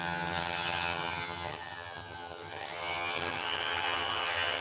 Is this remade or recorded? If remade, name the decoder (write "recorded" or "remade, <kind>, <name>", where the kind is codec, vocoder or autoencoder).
remade, vocoder, HiFi-GAN